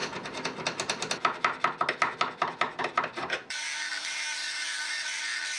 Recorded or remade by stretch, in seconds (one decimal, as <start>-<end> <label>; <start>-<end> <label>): 0.0-2.8 recorded; 2.8-5.6 remade